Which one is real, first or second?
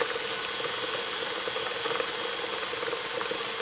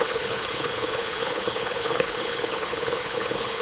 first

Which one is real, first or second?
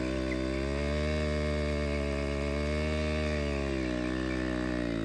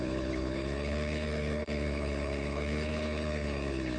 first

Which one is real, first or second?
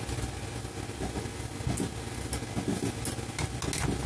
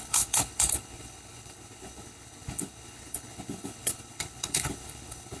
first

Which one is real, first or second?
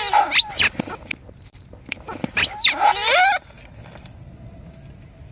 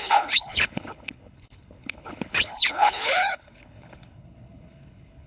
first